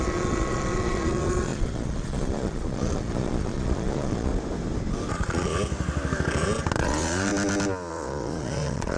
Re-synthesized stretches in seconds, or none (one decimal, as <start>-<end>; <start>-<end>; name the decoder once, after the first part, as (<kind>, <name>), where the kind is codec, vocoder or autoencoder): 0.0-4.3 (vocoder, Vocos); 5.1-5.5; 6.8-7.3; 7.9-9.0